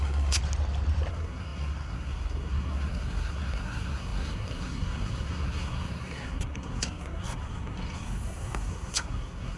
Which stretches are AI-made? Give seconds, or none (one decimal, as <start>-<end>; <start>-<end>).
0.0-0.4; 1.1-9.6